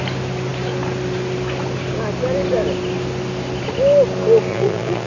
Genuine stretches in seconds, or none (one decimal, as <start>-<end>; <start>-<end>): 0.0-4.5